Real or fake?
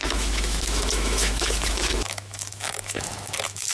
fake